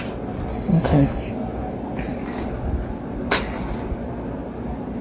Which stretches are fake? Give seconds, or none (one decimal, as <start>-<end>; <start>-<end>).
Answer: 0.5-1.3